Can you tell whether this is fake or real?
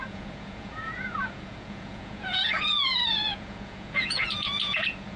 fake